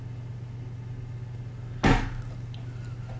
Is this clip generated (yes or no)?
no